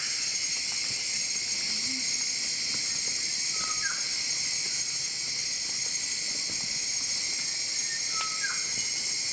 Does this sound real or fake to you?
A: real